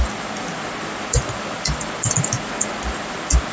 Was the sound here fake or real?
real